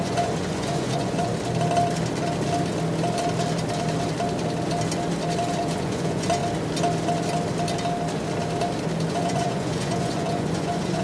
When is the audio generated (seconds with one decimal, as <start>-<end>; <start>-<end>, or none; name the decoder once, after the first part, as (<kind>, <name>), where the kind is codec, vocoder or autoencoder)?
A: 0.0-1.3 (vocoder, Vocos); 5.6-6.4; 9.1-11.0